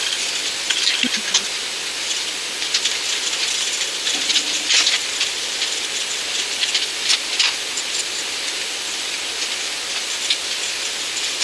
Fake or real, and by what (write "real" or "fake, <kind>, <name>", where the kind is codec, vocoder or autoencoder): real